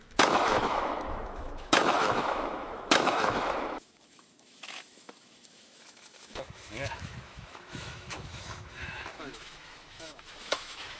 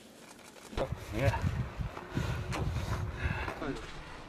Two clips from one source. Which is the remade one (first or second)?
first